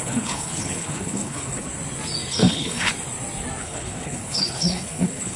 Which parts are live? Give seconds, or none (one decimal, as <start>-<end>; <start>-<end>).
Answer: 1.7-2.3; 2.9-3.6